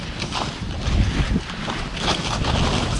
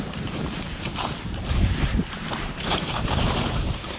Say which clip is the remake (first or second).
second